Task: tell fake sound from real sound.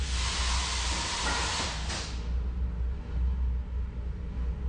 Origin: real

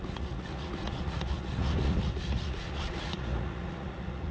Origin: fake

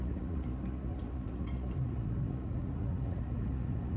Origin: fake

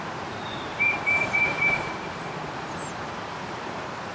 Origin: fake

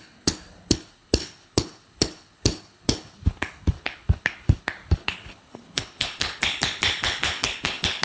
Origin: fake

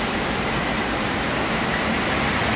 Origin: real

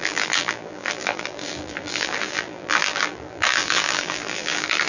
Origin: fake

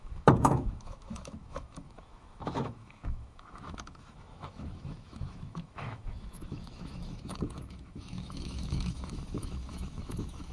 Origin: fake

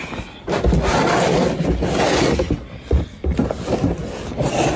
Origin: real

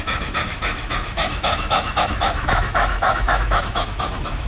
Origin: fake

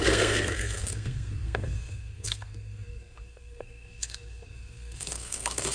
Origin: fake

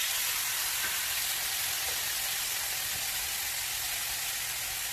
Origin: real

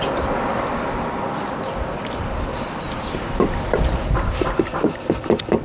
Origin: real